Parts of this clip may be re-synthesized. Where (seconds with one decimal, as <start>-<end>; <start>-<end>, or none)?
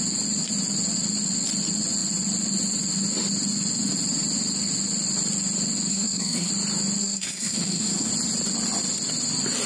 5.9-6.5; 7.0-8.1